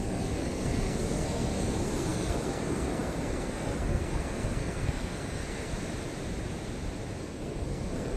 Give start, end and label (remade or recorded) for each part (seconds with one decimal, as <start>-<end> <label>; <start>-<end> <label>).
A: 0.0-5.7 remade; 5.7-7.2 recorded; 7.2-8.2 remade

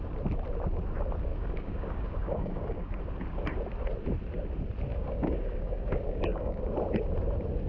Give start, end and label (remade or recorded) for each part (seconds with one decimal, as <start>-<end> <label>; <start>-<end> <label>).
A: 0.0-1.3 recorded; 1.3-3.0 remade; 3.0-4.9 recorded; 4.9-6.6 remade; 6.6-7.7 recorded

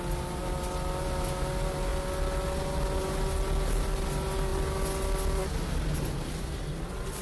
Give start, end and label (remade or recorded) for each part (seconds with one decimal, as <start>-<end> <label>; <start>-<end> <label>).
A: 0.0-7.2 recorded

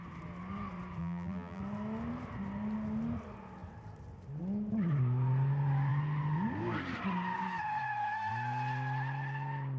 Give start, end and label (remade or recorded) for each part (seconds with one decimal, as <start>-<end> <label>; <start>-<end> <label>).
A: 0.0-1.0 recorded; 1.0-1.6 remade; 1.6-9.8 recorded

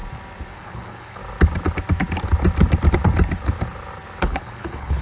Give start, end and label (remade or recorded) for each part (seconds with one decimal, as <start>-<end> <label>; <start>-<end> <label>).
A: 0.0-0.5 recorded; 0.5-1.2 remade; 1.2-4.2 recorded; 4.2-5.0 remade

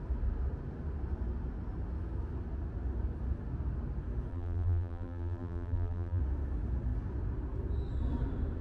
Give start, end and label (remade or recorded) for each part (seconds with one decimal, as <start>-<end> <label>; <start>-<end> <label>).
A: 0.0-4.3 recorded; 4.3-6.2 remade; 6.2-8.6 recorded